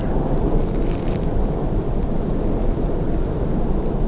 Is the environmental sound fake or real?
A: real